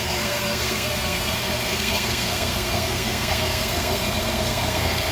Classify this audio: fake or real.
fake